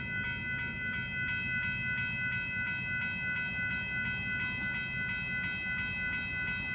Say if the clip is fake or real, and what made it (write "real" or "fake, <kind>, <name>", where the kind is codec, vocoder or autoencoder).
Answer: real